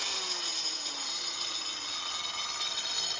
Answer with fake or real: real